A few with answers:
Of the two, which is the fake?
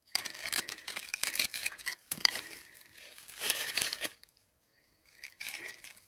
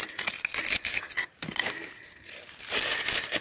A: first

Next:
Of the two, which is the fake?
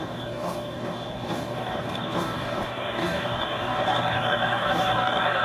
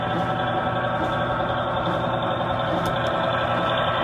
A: first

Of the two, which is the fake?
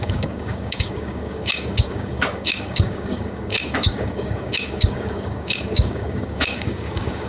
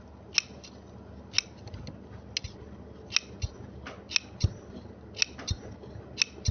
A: first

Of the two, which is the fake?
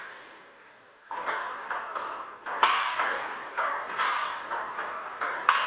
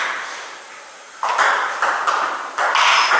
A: first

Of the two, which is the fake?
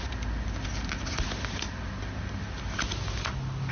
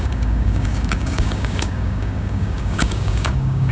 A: second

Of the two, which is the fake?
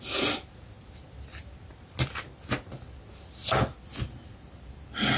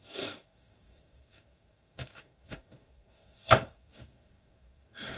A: second